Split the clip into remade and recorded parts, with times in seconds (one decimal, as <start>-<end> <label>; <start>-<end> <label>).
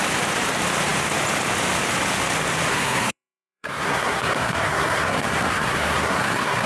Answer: 0.0-2.7 recorded; 2.7-6.7 remade